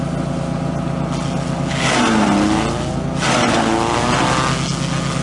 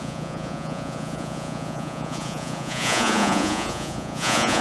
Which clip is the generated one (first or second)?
second